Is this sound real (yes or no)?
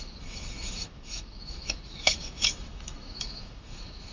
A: no